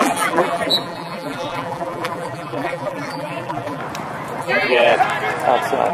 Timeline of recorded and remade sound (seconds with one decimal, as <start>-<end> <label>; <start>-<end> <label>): 0.0-3.8 remade; 3.8-4.4 recorded; 4.4-4.9 remade; 4.9-5.9 recorded